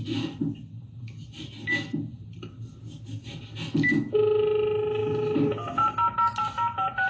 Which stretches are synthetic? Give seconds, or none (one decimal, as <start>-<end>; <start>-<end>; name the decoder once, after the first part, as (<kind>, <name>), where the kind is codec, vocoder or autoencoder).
none